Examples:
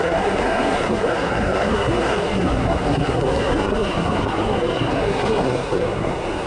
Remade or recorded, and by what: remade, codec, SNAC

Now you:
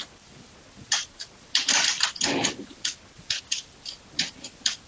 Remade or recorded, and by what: recorded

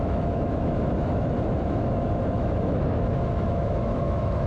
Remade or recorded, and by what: remade, autoencoder, DAC-VAE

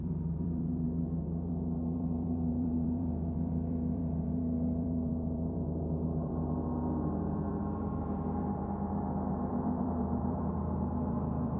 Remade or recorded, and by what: remade, vocoder, BigVGAN v2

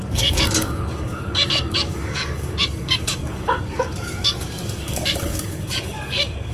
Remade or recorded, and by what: remade, codec, DAC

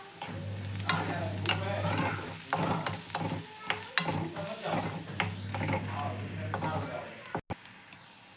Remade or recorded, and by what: recorded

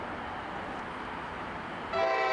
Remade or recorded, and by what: recorded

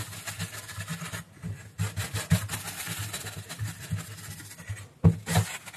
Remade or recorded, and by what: recorded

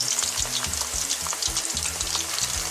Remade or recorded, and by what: recorded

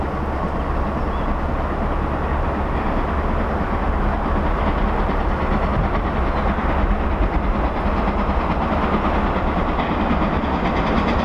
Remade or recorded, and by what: recorded